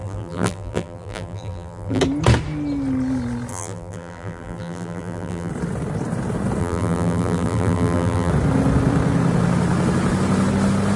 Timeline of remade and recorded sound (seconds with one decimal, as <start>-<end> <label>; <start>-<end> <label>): 0.0-2.0 remade; 2.0-3.5 recorded; 3.5-5.5 remade; 5.5-6.6 recorded; 6.6-8.3 remade; 8.3-11.0 recorded